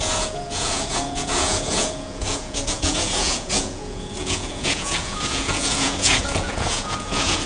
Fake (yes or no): yes